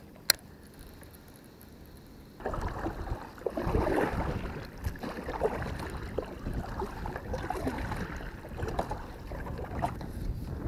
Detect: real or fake real